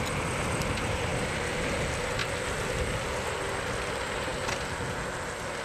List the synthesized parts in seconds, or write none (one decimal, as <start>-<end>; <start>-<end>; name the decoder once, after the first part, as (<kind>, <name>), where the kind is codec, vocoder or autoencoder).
0.0-1.1 (vocoder, BigVGAN v2); 1.7-2.2; 3.3-4.3